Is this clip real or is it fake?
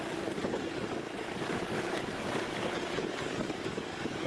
fake